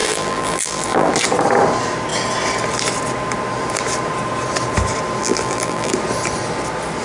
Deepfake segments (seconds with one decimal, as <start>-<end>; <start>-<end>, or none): 0.0-1.1; 5.2-5.9